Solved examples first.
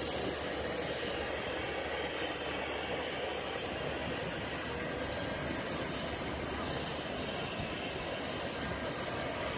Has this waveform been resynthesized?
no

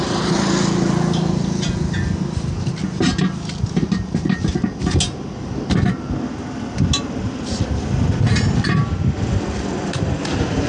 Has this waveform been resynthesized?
no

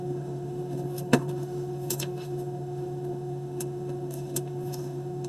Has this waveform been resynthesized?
yes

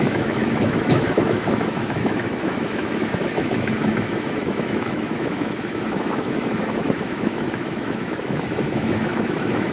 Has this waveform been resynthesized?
yes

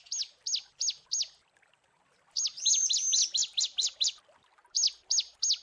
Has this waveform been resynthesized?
no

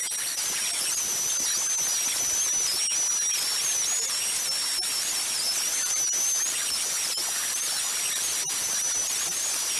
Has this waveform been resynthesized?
no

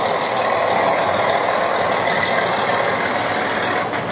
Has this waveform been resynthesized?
no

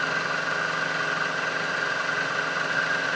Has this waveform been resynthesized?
no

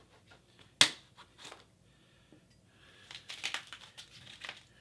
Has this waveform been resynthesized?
no